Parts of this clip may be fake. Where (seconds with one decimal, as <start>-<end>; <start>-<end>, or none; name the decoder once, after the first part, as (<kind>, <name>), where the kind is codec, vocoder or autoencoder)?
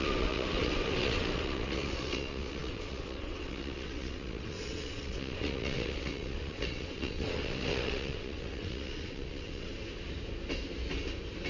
0.0-9.7 (vocoder, WaveNeXt)